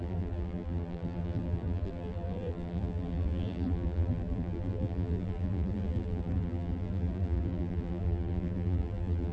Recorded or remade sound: remade